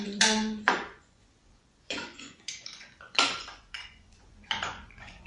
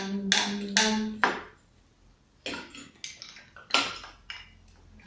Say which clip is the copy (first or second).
first